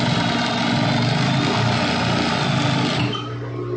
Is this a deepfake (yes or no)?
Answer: no